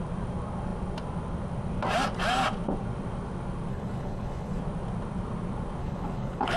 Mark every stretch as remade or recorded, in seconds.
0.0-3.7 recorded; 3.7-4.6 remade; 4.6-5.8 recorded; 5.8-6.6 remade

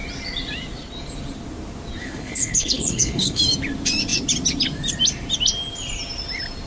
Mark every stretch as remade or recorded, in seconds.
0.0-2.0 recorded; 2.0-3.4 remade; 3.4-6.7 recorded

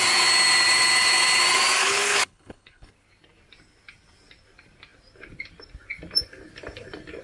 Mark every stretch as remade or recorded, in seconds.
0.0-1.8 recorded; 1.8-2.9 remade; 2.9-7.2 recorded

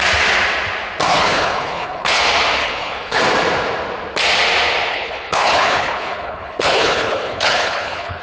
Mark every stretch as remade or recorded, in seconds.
0.0-1.1 recorded; 1.1-2.2 remade; 2.2-2.6 recorded; 2.6-3.2 remade; 3.2-4.9 recorded; 4.9-8.2 remade

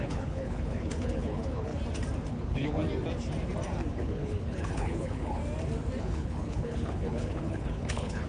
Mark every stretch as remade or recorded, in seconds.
0.0-1.7 remade; 1.7-2.3 recorded; 2.3-2.8 remade; 2.8-3.9 recorded; 3.9-5.4 remade; 5.4-6.0 recorded; 6.0-8.3 remade

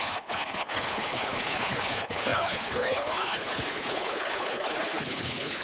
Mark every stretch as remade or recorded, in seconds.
0.0-5.6 remade

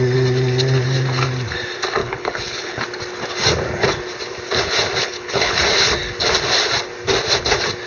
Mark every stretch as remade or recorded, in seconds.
0.0-2.0 recorded; 2.0-2.8 remade; 2.8-5.0 recorded; 5.0-5.6 remade; 5.6-7.9 recorded